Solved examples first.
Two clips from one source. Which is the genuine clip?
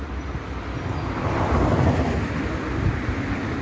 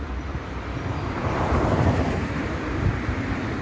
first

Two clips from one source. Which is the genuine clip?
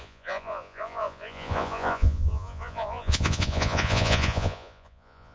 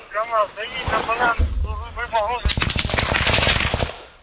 second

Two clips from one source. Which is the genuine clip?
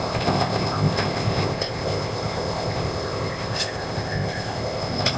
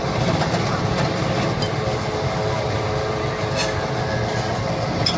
second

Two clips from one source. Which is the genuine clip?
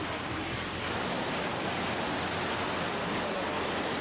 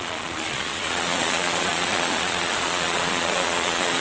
first